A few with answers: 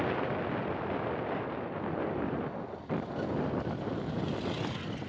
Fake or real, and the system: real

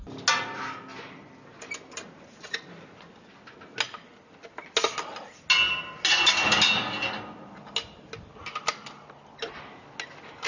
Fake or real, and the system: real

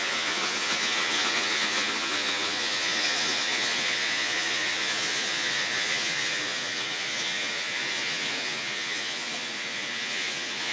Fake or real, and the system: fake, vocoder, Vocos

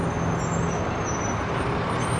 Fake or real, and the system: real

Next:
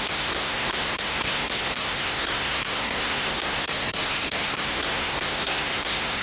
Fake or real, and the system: fake, codec, SNAC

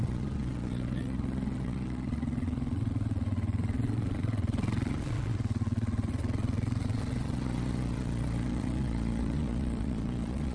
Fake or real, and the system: fake, vocoder, Vocos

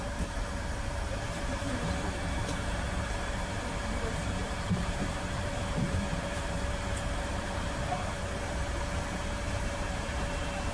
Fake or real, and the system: fake, vocoder, BigVGAN v2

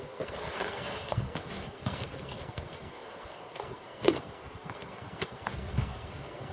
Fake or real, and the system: fake, codec, SNAC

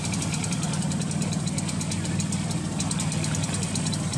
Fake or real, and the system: real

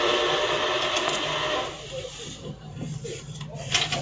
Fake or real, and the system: real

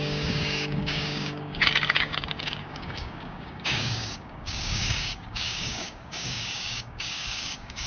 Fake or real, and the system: fake, codec, DAC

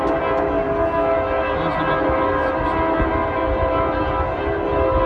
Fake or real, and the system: real